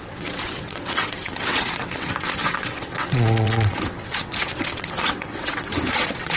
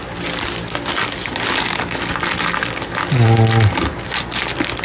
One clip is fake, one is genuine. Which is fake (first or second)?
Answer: first